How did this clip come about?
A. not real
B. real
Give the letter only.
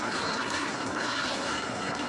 A